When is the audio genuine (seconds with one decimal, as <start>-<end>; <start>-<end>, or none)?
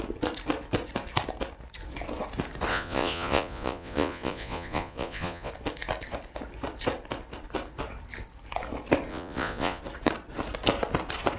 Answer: 0.0-2.7; 5.5-9.1; 9.8-11.4